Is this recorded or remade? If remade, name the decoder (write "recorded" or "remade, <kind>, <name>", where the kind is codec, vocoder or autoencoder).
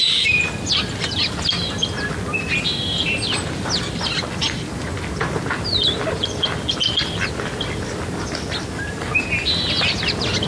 recorded